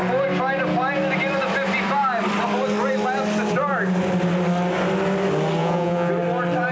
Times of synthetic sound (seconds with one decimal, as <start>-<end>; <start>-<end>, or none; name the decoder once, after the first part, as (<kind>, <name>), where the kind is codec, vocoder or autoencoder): 5.6-6.1 (vocoder, Vocos)